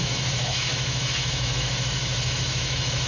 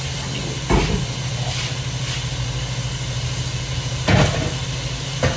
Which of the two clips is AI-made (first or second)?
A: first